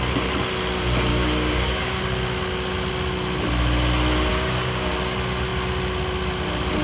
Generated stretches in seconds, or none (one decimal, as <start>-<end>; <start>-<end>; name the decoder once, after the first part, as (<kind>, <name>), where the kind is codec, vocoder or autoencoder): 1.1-2.0 (codec, DAC); 4.3-4.9